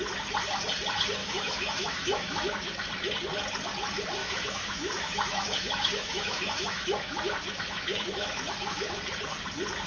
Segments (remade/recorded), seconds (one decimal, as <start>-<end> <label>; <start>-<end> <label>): 0.0-1.2 recorded; 1.2-2.9 remade; 2.9-4.2 recorded; 4.2-8.9 remade; 8.9-9.9 recorded